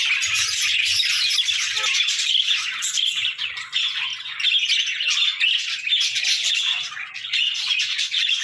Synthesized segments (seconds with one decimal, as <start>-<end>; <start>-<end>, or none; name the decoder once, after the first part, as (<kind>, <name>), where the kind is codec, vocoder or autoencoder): none

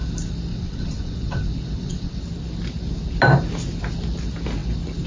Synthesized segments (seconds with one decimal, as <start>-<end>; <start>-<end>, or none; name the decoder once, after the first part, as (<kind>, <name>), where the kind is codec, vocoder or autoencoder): 0.5-2.2 (vocoder, WaveNeXt)

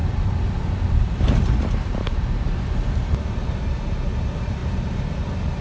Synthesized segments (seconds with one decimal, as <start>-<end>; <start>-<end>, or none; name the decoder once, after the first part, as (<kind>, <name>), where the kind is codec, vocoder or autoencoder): 0.0-2.1 (vocoder, BigVGAN v2)

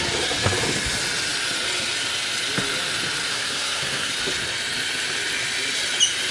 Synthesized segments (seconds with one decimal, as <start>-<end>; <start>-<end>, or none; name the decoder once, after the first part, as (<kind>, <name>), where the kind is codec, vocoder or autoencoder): 3.3-4.1 (codec, SNAC)

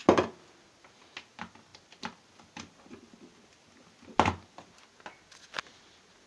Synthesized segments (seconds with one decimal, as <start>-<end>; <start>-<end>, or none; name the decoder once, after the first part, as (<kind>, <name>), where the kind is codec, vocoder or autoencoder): none

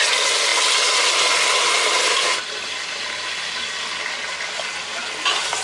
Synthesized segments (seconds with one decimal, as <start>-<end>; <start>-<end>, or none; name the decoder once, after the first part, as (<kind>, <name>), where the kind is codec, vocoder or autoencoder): none

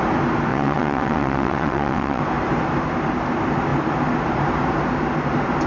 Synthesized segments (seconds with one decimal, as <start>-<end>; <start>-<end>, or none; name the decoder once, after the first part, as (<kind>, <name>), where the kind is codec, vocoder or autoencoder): 0.5-2.2 (vocoder, WaveNeXt)